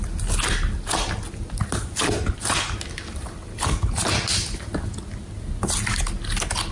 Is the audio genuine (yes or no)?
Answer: yes